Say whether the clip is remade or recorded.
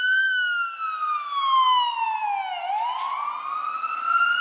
recorded